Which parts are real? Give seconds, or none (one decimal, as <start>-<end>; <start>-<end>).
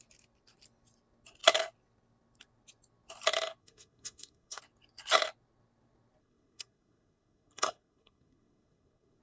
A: 0.0-3.6; 4.6-6.2